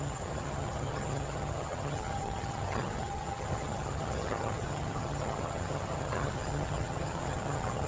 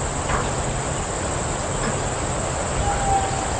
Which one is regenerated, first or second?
first